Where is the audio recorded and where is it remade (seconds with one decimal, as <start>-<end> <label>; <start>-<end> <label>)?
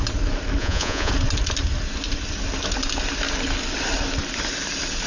0.0-0.6 recorded; 0.6-1.1 remade; 1.1-5.1 recorded